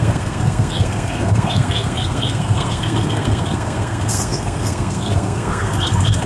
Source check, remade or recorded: remade